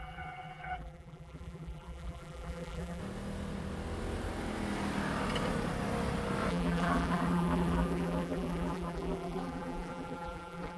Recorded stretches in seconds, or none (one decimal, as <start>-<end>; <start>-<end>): 3.0-6.5